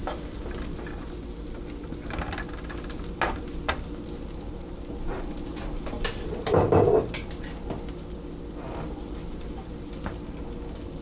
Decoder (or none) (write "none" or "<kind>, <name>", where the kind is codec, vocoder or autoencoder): none